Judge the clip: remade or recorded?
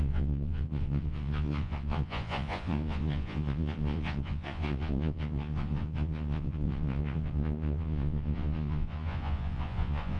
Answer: remade